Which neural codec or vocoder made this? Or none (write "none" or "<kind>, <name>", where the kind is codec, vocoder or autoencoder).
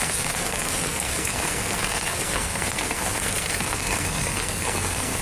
codec, SNAC